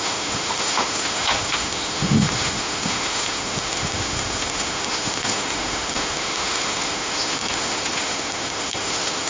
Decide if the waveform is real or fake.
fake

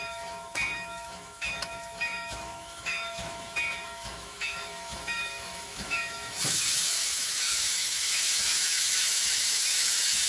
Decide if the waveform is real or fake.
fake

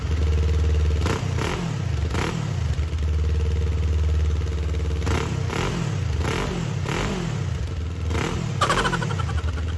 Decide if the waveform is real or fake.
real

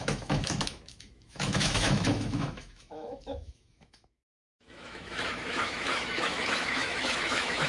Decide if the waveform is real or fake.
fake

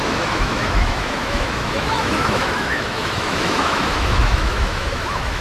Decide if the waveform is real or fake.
fake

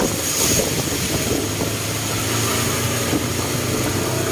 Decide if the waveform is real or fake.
real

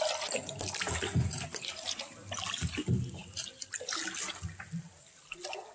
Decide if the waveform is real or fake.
real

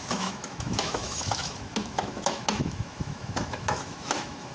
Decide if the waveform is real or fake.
fake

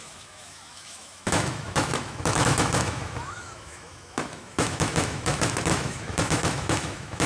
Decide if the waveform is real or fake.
fake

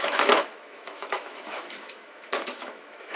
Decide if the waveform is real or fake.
fake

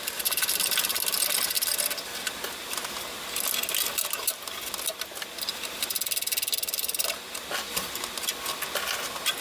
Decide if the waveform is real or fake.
real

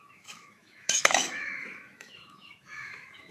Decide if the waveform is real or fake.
fake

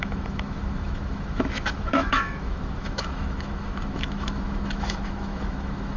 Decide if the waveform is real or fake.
fake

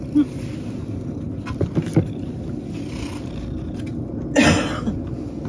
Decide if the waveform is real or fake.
real